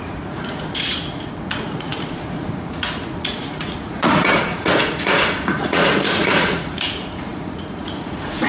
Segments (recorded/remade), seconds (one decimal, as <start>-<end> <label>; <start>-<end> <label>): 0.0-8.5 remade

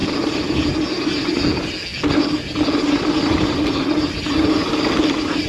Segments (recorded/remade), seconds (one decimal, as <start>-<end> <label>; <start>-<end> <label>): 0.0-5.5 recorded

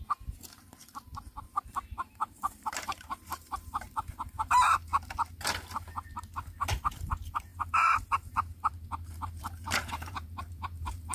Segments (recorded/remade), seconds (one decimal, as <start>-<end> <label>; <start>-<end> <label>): 0.0-4.9 remade; 4.9-6.7 recorded; 6.7-11.1 remade

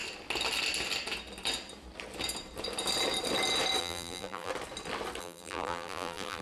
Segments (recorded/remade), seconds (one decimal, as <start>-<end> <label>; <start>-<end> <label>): 0.0-3.8 recorded; 3.8-4.5 remade; 4.5-5.2 recorded; 5.2-6.4 remade

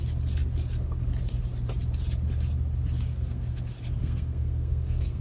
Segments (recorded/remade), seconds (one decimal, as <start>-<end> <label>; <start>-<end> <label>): 0.0-3.1 recorded; 3.1-3.6 remade; 3.6-4.0 recorded; 4.0-5.2 remade

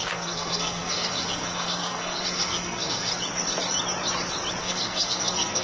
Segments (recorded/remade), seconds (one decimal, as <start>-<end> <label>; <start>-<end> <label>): 0.0-3.1 remade; 3.1-4.6 recorded; 4.6-5.6 remade

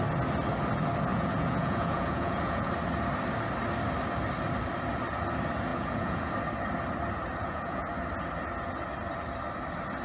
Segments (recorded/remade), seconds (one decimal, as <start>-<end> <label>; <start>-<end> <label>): 0.0-1.1 recorded; 1.1-2.7 remade; 2.7-5.7 recorded; 5.7-6.3 remade; 6.3-7.4 recorded; 7.4-7.9 remade; 7.9-10.0 recorded

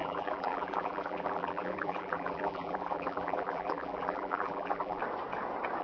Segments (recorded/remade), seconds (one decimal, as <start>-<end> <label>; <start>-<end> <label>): 0.0-5.0 remade; 5.0-5.8 recorded